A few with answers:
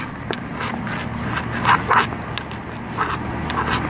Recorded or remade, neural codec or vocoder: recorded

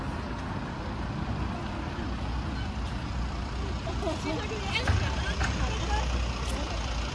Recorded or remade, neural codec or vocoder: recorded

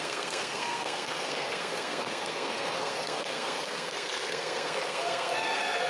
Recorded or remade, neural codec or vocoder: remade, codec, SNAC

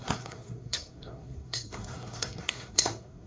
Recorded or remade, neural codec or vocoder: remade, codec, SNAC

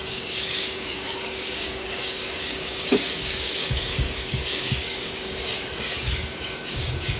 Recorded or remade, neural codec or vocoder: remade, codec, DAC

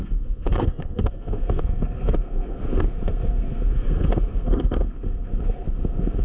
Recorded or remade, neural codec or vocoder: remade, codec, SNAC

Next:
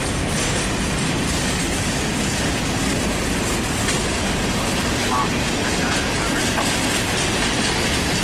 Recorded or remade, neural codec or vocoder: recorded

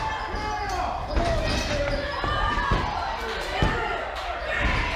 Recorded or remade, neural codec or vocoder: recorded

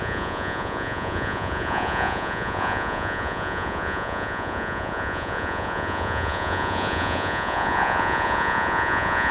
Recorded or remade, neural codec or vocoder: remade, vocoder, Vocos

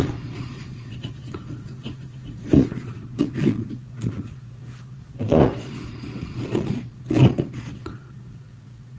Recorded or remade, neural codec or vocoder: remade, vocoder, Vocos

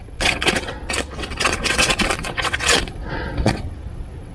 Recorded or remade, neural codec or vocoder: remade, vocoder, WaveNeXt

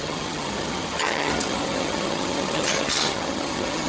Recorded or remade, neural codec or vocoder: remade, vocoder, HiFi-GAN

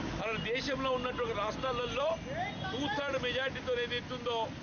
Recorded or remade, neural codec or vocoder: recorded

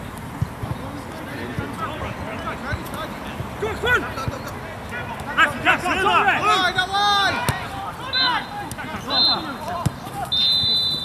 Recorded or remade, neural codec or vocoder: recorded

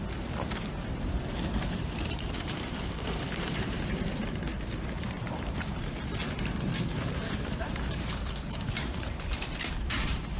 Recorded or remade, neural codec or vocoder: remade, vocoder, BigVGAN v2